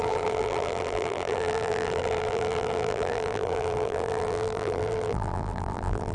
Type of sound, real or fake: fake